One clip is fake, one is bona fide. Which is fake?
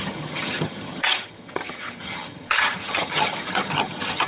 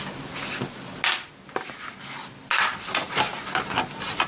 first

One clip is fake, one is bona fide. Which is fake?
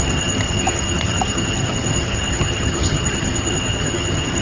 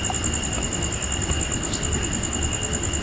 first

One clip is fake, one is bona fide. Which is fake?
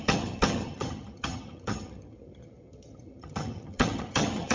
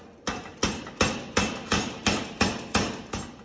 first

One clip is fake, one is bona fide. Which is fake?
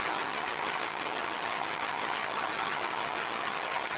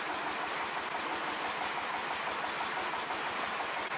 first